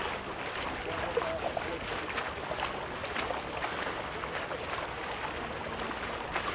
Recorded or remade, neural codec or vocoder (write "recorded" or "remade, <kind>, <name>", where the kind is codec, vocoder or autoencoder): recorded